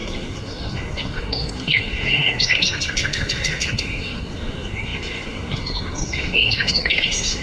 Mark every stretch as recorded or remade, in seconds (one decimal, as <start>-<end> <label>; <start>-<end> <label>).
0.0-7.4 remade